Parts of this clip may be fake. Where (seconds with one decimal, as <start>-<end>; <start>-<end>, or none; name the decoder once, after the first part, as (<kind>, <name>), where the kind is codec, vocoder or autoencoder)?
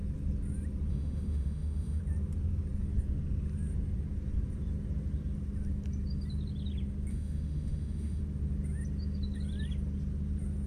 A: 0.9-2.0 (autoencoder, DAC-VAE); 7.1-8.2